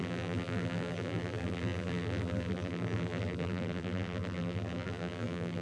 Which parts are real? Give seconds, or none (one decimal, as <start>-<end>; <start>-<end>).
none